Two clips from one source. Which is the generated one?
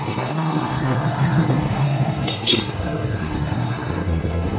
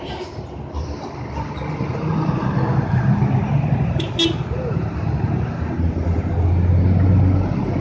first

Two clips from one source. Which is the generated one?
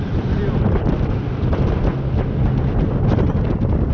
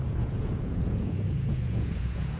second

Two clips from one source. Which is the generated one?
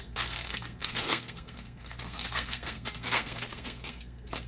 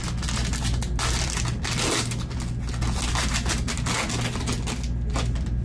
first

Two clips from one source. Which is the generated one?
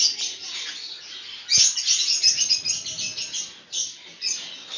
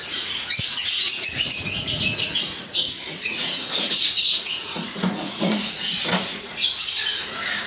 second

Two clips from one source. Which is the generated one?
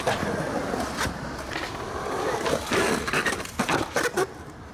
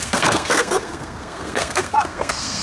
second